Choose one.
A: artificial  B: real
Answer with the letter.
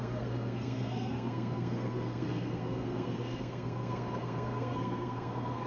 A